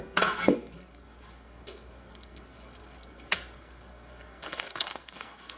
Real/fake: fake